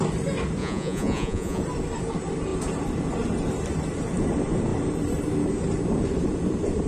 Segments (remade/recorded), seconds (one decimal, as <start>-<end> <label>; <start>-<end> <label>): 0.0-0.6 recorded; 0.6-1.6 remade; 1.6-6.9 recorded